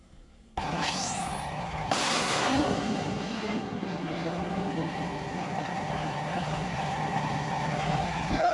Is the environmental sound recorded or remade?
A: remade